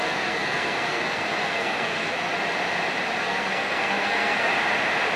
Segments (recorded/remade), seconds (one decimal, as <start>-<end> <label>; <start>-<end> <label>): 0.0-2.3 remade; 2.3-3.2 recorded; 3.2-4.5 remade; 4.5-5.2 recorded